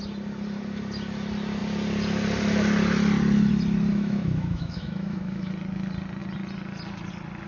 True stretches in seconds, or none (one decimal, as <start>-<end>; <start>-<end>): 0.0-3.9; 5.5-7.5